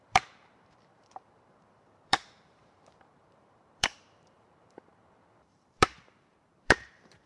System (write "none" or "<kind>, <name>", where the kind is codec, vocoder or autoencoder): vocoder, BigVGAN v2